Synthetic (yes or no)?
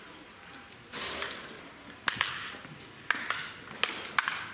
no